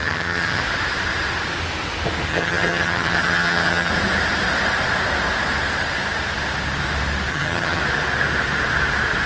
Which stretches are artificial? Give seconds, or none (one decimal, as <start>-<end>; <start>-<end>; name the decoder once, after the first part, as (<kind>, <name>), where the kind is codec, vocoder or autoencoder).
0.0-0.6 (vocoder, HiFi-GAN); 2.3-3.9; 7.3-7.8